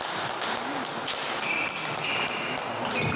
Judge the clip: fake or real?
real